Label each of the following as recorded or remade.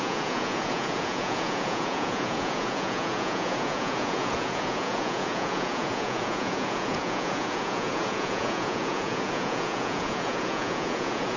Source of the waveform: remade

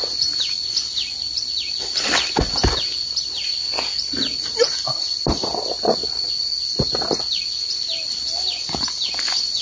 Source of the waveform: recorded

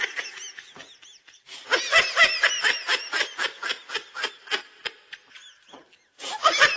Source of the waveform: recorded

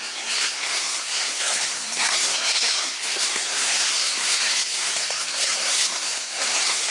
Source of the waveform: remade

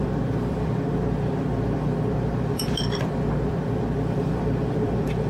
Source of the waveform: remade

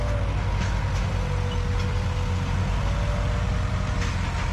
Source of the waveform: recorded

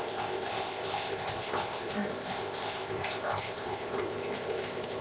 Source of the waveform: remade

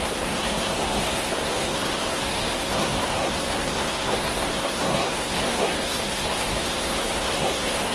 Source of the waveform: remade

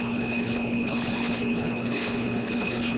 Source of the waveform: remade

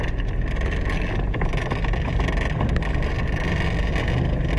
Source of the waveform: recorded